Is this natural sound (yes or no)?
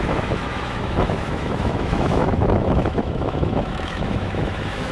no